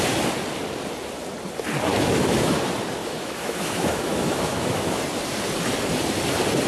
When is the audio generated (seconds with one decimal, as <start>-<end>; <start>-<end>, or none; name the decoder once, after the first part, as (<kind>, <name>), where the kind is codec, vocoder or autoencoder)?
1.9-2.6 (autoencoder, DAC-VAE); 3.0-5.0